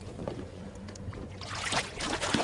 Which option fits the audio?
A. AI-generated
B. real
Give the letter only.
A